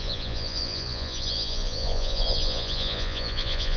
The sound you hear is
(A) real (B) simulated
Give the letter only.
B